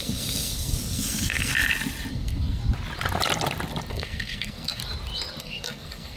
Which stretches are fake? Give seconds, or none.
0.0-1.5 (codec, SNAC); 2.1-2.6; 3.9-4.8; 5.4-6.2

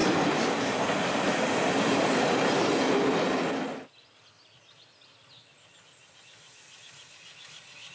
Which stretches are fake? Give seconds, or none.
0.0-2.9 (vocoder, BigVGAN v2)

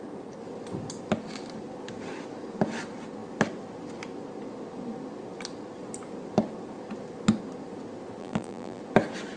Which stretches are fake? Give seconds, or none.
8.2-8.8 (vocoder, BigVGAN v2)